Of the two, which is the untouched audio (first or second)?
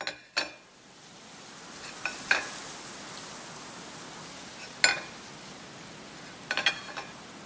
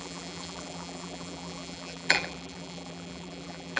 first